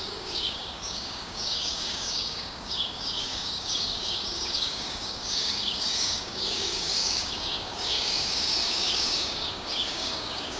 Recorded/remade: remade